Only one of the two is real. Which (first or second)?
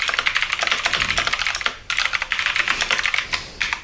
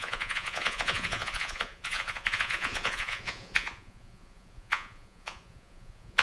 first